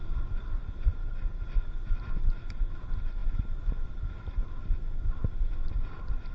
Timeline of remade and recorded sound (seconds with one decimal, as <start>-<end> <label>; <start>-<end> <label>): 0.0-6.3 recorded

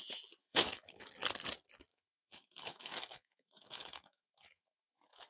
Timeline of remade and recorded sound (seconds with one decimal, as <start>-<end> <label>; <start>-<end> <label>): 0.0-0.4 recorded; 0.4-1.1 remade; 1.1-1.9 recorded; 1.9-5.3 remade